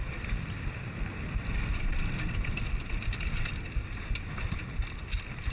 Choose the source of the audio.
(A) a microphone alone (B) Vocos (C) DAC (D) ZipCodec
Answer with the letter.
A